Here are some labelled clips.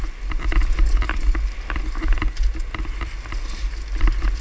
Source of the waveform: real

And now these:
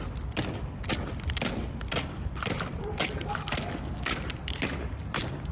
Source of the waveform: real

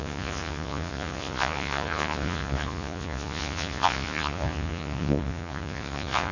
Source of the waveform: fake